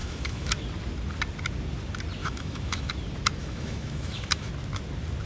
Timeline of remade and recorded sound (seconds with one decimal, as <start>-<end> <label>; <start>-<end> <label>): 0.0-0.5 remade; 0.5-2.2 recorded; 2.2-2.9 remade; 2.9-3.4 recorded; 3.4-4.5 remade; 4.5-5.3 recorded